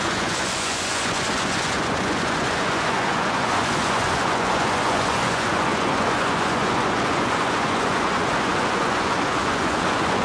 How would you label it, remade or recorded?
remade